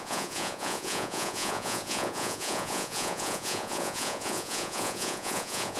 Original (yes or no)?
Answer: no